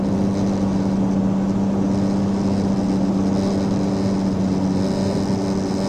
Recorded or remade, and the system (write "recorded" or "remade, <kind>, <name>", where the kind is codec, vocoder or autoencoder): recorded